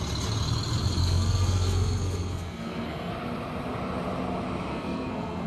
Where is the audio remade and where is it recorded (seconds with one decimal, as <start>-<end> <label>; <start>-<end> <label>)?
0.0-1.0 recorded; 1.0-3.1 remade; 3.1-4.7 recorded; 4.7-5.5 remade